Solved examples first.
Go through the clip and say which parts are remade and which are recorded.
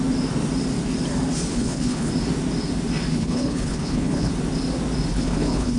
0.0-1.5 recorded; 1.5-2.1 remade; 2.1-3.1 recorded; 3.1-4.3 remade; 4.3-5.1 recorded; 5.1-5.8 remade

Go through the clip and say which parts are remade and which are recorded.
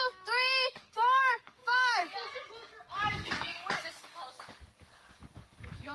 0.0-5.9 remade